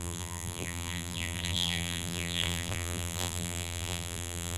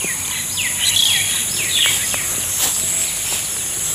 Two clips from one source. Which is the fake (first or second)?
first